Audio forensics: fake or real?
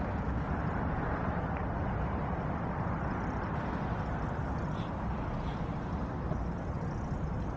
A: real